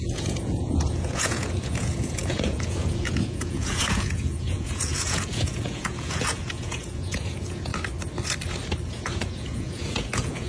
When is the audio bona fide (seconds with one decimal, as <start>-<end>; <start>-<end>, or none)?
7.7-8.9